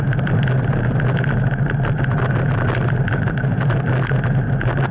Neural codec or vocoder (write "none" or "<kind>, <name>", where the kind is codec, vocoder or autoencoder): none